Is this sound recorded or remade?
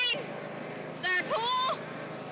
recorded